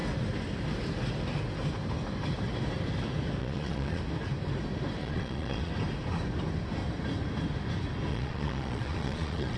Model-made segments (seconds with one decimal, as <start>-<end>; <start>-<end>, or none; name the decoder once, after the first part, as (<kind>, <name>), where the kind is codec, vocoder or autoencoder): 3.4-4.0 (vocoder, Vocos); 5.0-5.7; 8.1-9.6